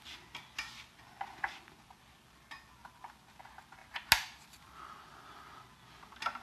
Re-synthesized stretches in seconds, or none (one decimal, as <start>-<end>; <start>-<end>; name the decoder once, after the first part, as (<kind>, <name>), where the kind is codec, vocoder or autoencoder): none